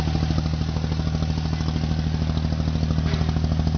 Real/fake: real